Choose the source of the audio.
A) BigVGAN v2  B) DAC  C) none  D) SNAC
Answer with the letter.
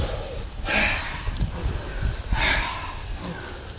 C